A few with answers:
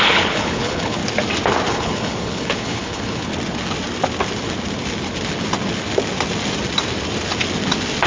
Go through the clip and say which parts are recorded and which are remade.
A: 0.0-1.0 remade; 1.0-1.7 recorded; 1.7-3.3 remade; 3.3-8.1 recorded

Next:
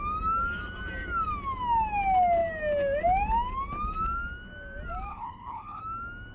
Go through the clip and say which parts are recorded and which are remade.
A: 0.0-5.1 recorded; 5.1-5.8 remade; 5.8-6.3 recorded